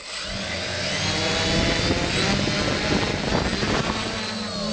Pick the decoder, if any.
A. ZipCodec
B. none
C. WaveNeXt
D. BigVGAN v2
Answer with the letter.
B